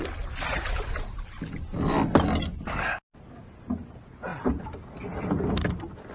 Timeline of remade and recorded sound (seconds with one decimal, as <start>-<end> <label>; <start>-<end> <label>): 0.0-6.1 recorded